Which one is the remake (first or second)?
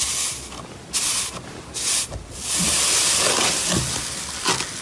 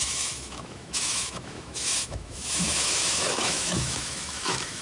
second